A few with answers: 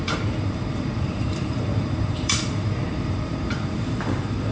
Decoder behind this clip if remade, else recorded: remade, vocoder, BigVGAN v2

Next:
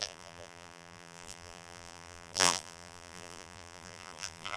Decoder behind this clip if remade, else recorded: remade, vocoder, BigVGAN v2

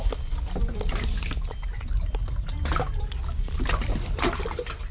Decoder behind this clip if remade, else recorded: recorded